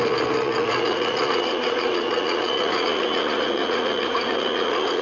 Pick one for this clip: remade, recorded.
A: remade